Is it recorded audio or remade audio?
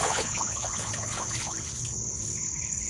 remade